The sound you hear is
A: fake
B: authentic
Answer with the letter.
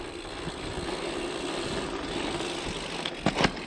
B